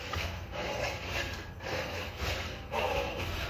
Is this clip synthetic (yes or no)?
yes